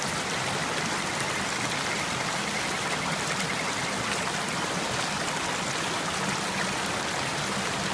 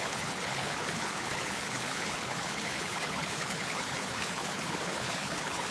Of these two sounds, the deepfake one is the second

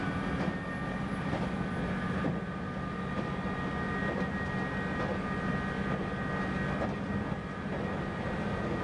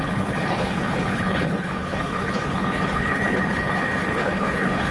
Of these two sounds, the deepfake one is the second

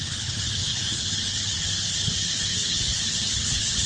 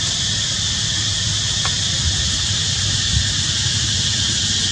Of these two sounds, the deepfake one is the first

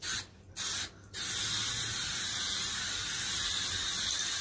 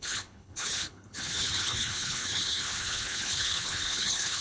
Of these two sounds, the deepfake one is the second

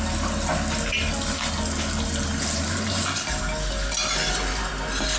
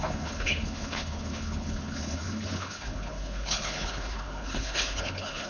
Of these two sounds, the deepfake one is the second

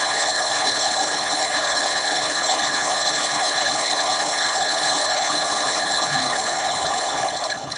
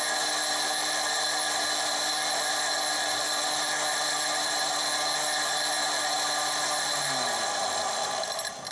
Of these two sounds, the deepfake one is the first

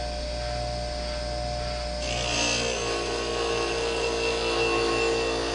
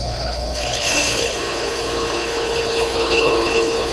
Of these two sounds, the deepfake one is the second